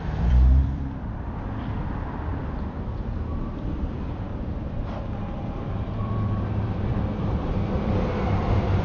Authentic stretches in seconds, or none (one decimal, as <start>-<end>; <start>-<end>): 2.3-3.8; 4.3-4.9